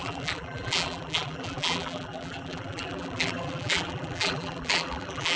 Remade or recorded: remade